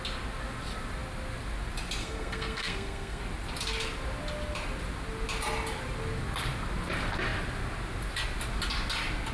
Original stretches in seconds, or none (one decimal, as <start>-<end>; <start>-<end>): 0.0-2.0; 3.2-9.3